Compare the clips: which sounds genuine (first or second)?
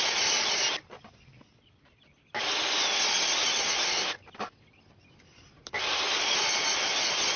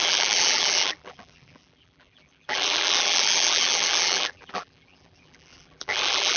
first